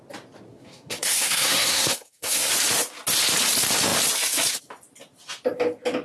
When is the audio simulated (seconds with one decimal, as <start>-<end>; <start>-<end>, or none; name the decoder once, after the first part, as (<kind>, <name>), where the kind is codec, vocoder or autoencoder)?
0.5-2.5 (codec, SNAC)